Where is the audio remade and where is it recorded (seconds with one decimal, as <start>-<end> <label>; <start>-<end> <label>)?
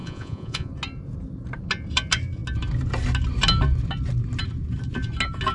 0.0-0.7 remade; 0.7-5.5 recorded